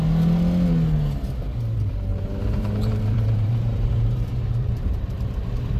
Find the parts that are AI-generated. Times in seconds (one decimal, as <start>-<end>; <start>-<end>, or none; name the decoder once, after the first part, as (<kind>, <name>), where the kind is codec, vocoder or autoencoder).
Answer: 2.1-5.8 (vocoder, BigVGAN v2)